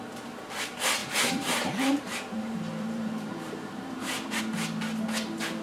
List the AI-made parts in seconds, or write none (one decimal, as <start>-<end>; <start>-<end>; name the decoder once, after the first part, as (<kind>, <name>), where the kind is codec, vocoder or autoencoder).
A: 1.0-4.4 (vocoder, BigVGAN v2)